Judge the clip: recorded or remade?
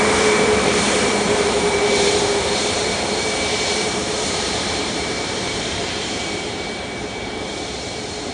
remade